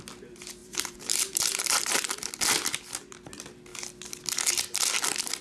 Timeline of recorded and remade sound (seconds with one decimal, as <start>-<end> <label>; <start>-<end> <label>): 0.0-0.6 recorded; 0.6-2.4 remade; 2.4-5.4 recorded